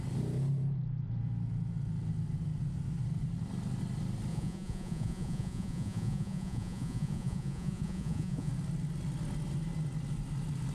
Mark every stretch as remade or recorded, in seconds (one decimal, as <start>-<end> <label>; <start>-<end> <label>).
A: 0.0-4.3 recorded; 4.3-8.5 remade; 8.5-10.7 recorded